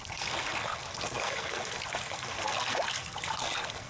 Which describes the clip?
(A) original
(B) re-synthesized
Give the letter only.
B